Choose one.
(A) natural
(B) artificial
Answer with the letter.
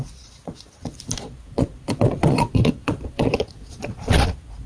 B